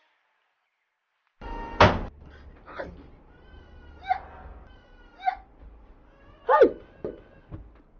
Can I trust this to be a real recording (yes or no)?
yes